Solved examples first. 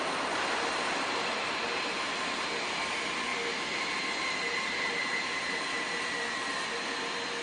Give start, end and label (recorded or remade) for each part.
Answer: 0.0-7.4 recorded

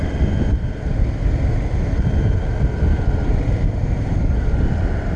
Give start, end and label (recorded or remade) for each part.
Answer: 0.0-5.2 recorded

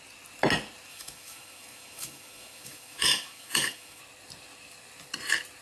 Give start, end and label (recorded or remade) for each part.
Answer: 0.0-0.9 recorded; 0.9-4.0 remade; 4.0-5.6 recorded